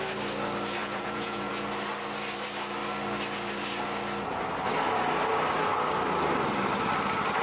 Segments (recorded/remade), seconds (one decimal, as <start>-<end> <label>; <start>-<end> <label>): 0.0-0.8 recorded; 0.8-1.5 remade; 1.5-7.4 recorded